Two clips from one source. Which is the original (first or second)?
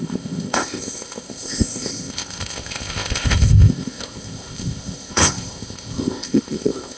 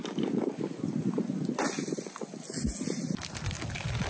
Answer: second